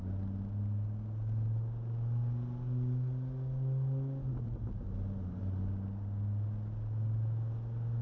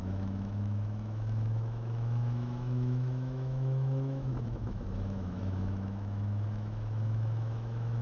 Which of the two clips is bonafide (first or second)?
first